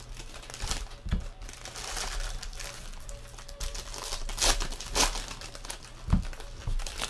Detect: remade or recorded recorded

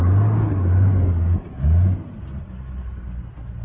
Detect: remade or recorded recorded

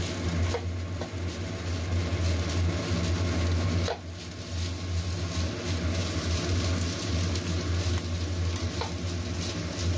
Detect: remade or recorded recorded